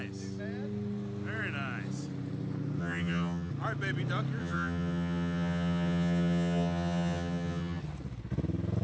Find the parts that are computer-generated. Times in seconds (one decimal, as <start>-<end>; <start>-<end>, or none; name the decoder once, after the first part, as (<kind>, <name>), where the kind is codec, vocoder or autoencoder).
2.8-3.5 (vocoder, HiFi-GAN); 4.4-7.8